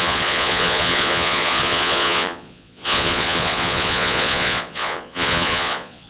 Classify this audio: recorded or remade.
remade